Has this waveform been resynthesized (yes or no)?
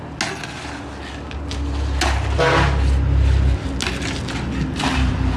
no